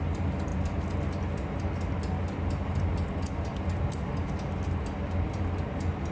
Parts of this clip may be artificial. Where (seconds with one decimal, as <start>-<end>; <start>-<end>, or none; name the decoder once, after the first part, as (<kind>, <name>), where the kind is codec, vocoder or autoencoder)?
none